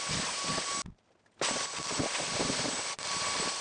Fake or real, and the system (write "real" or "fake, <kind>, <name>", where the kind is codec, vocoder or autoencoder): real